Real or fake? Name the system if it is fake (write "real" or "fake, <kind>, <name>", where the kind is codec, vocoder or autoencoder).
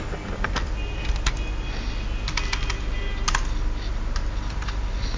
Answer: real